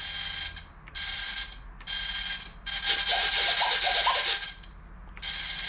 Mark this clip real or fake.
real